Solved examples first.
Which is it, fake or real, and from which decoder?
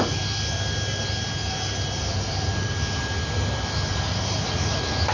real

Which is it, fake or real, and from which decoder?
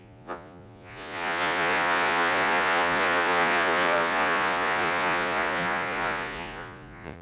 fake, vocoder, Vocos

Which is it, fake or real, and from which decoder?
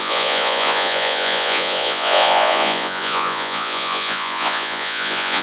fake, vocoder, Vocos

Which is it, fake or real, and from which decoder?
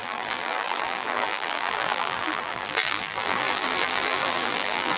fake, vocoder, BigVGAN v2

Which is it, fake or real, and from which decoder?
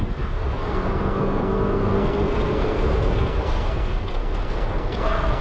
fake, codec, SNAC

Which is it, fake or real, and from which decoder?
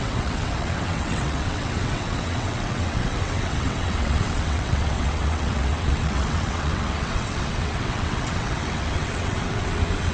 fake, vocoder, WaveNeXt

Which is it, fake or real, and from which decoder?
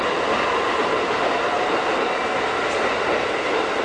real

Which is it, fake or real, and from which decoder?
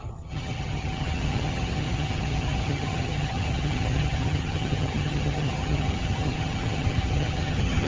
fake, vocoder, HiFi-GAN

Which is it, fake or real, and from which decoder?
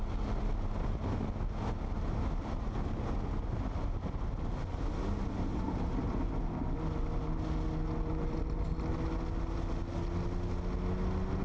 real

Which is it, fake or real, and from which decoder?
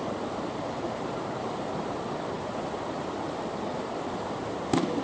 fake, vocoder, BigVGAN v2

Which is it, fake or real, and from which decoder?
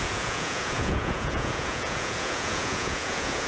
fake, vocoder, Vocos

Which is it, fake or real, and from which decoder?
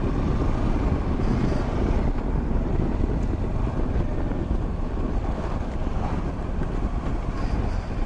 real